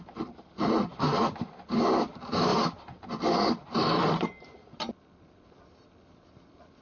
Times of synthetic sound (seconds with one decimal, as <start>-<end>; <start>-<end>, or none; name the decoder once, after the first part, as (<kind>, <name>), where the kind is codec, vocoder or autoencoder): 0.0-6.8 (vocoder, BigVGAN v2)